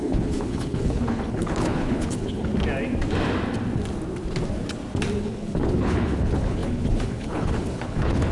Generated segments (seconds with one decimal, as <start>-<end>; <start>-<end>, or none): 0.0-2.5; 5.2-8.3